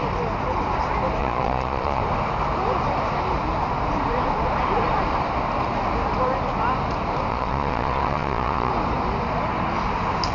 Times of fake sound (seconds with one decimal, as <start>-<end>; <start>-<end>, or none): 1.2-2.0; 7.3-8.7